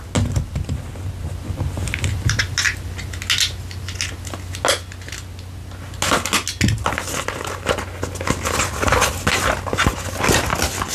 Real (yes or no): yes